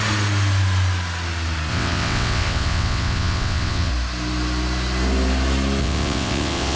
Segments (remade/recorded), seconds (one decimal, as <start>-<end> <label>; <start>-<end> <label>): 0.0-1.7 recorded; 1.7-3.9 remade; 3.9-5.8 recorded; 5.8-6.8 remade